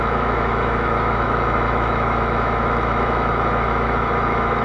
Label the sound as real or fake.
fake